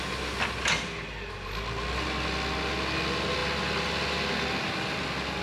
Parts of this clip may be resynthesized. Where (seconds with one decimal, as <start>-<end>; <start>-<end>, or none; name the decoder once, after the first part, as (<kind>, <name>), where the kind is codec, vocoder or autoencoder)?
none